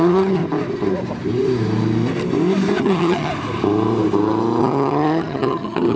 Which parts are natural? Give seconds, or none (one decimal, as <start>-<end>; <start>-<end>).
0.4-2.8; 3.3-4.6